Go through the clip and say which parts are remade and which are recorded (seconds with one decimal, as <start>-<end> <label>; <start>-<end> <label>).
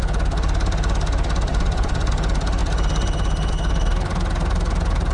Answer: 0.0-1.5 recorded; 1.5-2.1 remade; 2.1-5.1 recorded